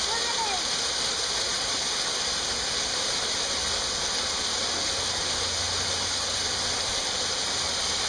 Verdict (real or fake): real